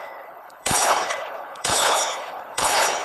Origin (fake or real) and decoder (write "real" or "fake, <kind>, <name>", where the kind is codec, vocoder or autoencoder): fake, codec, HILCodec